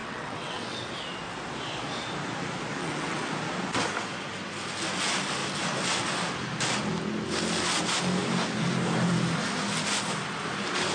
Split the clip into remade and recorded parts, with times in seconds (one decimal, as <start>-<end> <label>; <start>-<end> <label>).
0.0-0.9 remade; 0.9-2.8 recorded; 2.8-3.3 remade; 3.3-10.9 recorded